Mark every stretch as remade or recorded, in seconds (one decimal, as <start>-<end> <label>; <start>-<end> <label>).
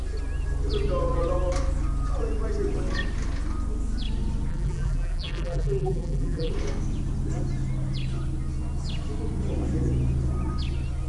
0.0-4.5 recorded; 4.5-6.5 remade; 6.5-11.1 recorded